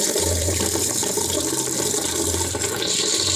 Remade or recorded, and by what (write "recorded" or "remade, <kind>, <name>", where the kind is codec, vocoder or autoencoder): remade, vocoder, BigVGAN v2